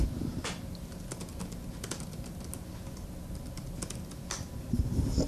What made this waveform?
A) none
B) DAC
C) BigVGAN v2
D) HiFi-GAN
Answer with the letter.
A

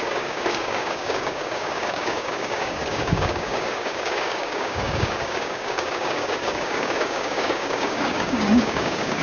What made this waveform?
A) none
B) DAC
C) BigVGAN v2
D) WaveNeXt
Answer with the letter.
B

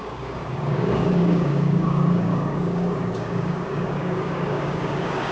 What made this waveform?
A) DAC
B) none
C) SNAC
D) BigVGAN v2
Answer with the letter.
A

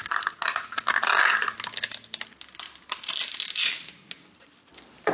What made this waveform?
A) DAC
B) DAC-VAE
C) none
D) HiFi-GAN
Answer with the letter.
C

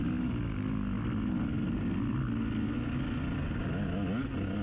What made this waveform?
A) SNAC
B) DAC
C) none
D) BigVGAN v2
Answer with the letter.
C